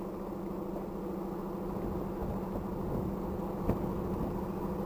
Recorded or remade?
recorded